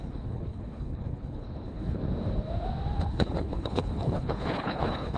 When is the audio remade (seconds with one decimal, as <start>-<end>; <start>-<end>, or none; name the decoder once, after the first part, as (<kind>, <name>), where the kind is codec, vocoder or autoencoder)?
0.0-2.0 (codec, HILCodec); 3.1-5.2

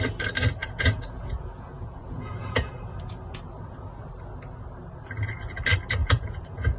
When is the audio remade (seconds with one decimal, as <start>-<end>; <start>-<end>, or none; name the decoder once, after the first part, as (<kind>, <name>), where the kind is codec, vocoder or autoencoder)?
0.6-4.1 (vocoder, Vocos); 6.0-6.8

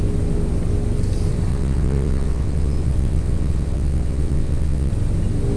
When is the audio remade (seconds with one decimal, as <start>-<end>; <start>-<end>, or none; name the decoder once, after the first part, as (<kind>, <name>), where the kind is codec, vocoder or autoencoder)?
1.5-4.9 (vocoder, WaveNeXt)

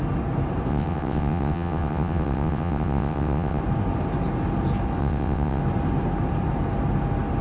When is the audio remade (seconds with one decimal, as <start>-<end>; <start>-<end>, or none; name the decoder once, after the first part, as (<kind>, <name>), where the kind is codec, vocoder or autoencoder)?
0.7-3.6 (vocoder, WaveNeXt); 5.0-5.6